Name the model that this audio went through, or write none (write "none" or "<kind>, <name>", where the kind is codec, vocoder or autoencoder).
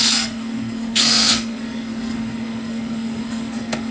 codec, SNAC